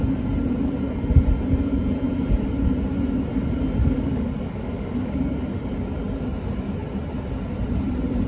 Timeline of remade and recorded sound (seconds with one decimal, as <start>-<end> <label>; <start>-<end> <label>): 0.0-3.8 recorded; 3.8-5.4 remade; 5.4-8.3 recorded